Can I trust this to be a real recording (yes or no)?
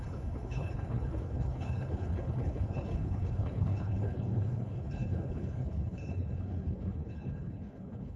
no